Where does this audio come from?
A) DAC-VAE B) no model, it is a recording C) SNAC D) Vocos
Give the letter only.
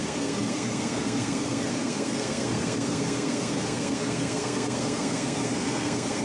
C